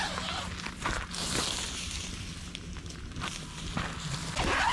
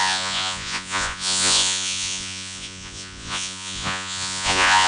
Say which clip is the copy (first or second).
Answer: second